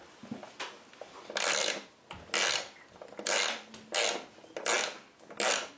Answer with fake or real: real